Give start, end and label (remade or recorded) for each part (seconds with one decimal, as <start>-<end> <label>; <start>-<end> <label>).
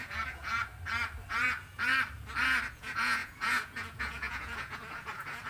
0.0-0.7 remade; 0.7-1.3 recorded; 1.3-1.9 remade; 1.9-2.7 recorded; 2.7-5.5 remade